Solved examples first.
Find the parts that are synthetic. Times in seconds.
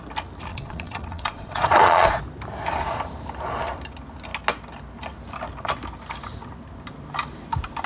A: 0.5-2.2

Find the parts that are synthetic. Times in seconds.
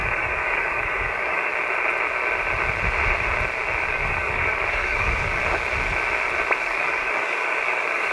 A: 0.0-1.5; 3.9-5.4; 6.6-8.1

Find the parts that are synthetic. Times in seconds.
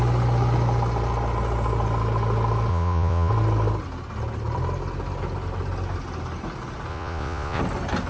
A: 2.7-3.3; 6.9-7.6